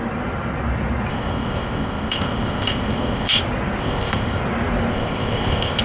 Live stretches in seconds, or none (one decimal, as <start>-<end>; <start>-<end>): 0.0-1.1; 3.4-3.8; 4.4-4.9